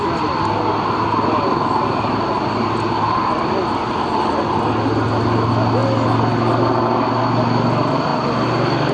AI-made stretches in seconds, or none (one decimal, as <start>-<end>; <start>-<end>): none